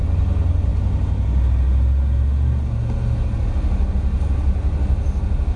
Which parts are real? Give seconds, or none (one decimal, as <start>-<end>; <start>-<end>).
0.0-5.6